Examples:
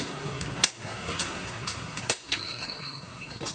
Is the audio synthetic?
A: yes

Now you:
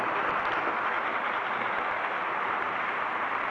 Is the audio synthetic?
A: no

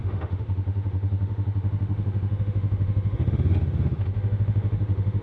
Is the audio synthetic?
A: yes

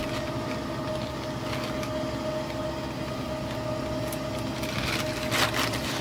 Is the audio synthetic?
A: no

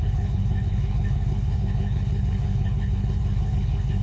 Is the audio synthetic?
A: yes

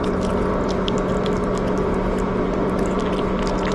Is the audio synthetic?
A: no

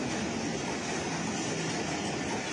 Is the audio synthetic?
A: no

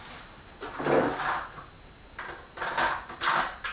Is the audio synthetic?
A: no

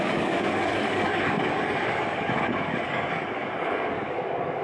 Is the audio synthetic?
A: yes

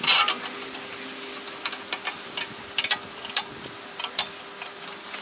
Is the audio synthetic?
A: no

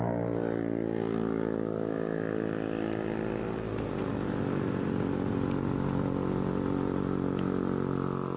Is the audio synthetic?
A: no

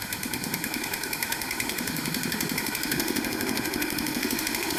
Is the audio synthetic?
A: yes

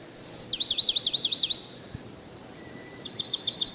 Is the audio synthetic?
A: yes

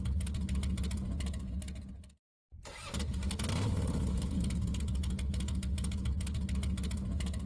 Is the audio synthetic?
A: no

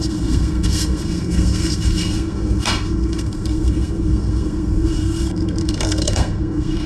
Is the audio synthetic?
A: yes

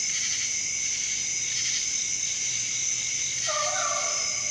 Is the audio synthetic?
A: no